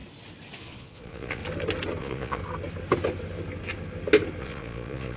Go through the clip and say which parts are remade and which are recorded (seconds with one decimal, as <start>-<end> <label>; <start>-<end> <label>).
0.0-0.6 recorded; 0.6-1.4 remade; 1.4-2.0 recorded; 2.0-2.4 remade; 2.4-4.4 recorded; 4.4-5.2 remade